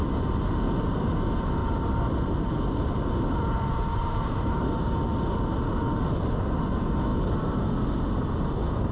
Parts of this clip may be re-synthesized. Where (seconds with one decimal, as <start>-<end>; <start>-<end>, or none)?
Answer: 1.6-3.0; 3.8-4.8; 7.1-7.7